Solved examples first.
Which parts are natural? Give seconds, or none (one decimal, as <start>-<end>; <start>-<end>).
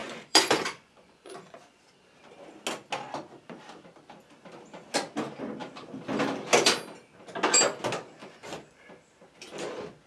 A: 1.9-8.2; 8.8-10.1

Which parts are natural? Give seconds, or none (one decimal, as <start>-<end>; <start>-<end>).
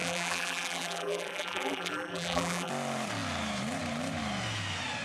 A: 2.7-5.0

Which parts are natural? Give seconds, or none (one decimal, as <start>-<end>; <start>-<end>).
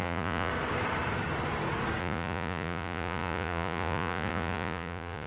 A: 0.5-2.0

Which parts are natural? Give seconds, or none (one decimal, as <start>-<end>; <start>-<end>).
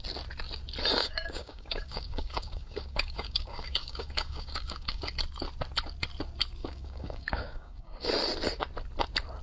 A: 0.0-1.0; 5.1-6.6; 8.1-9.4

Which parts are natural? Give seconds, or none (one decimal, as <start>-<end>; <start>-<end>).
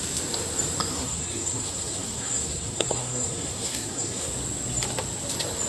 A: 0.0-0.9; 4.3-5.7